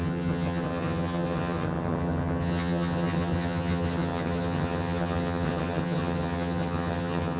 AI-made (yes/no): yes